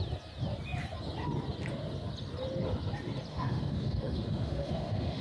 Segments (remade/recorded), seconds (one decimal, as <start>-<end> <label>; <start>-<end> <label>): 0.0-3.3 recorded; 3.3-5.2 remade